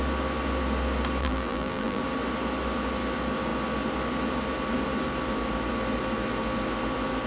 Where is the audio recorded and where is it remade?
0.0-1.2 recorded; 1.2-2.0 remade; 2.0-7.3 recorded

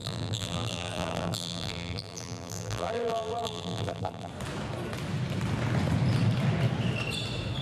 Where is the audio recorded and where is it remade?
0.0-4.3 remade; 4.3-7.6 recorded